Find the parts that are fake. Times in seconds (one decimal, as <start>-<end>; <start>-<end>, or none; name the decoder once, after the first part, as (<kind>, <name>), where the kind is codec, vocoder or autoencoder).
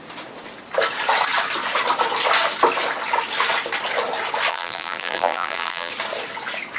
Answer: 4.5-5.9 (vocoder, BigVGAN v2)